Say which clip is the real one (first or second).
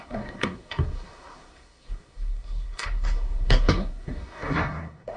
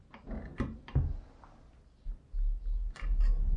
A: second